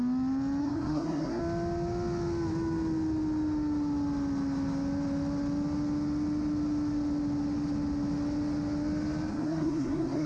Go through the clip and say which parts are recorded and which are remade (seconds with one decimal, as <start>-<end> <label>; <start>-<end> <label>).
0.0-0.6 recorded; 0.6-1.4 remade; 1.4-9.3 recorded; 9.3-10.3 remade